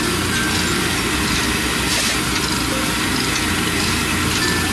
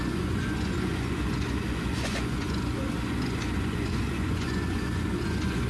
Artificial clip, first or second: second